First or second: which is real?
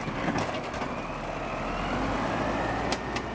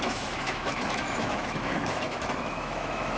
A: first